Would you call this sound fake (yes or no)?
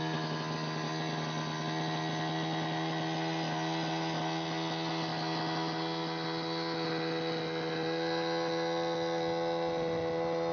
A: no